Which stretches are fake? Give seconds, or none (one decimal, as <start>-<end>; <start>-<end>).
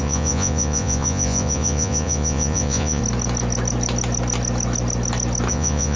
0.0-3.0; 5.5-6.0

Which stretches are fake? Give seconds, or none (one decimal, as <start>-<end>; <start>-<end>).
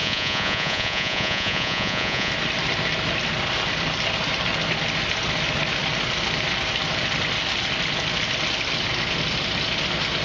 0.0-2.3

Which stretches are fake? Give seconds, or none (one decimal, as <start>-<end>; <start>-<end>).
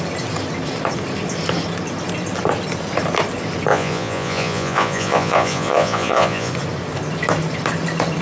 3.7-6.5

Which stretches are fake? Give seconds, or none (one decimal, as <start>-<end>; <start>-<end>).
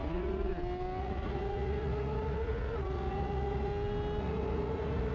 0.0-0.5; 1.0-3.7; 4.2-5.1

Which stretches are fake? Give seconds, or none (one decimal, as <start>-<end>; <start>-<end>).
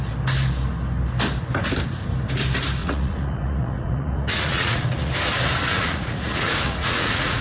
2.8-5.1; 5.7-7.4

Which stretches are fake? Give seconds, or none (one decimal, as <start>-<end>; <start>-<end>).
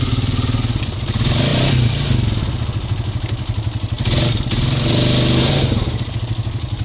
none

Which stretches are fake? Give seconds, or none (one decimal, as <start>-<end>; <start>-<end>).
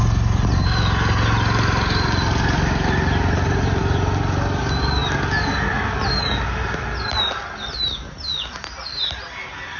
none